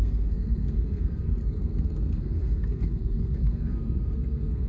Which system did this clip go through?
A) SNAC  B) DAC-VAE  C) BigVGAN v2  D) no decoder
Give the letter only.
A